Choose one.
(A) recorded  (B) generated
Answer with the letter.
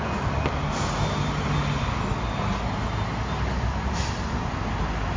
A